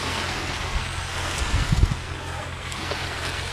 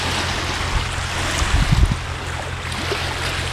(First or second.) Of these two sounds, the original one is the second